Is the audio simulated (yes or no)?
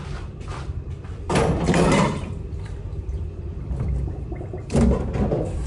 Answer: yes